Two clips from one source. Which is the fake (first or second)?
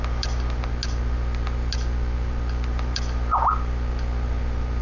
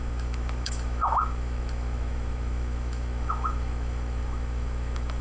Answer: second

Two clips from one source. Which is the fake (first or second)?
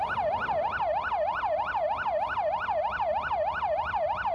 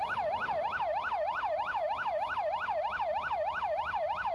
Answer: second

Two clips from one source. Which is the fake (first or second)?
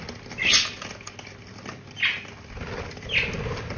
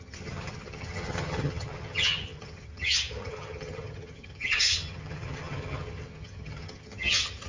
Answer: second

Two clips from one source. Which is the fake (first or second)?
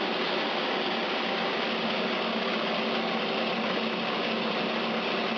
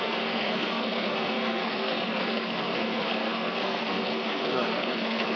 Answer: second